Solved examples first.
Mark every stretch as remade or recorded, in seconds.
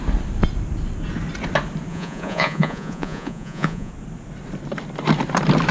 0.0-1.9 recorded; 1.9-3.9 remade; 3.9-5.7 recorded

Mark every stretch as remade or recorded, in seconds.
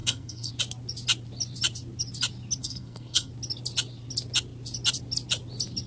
0.0-0.5 remade; 0.5-2.6 recorded; 2.6-3.3 remade; 3.3-5.9 recorded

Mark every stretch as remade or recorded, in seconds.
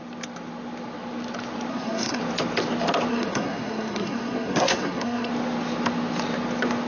0.0-1.7 recorded; 1.7-2.2 remade; 2.2-3.1 recorded; 3.1-5.3 remade; 5.3-6.9 recorded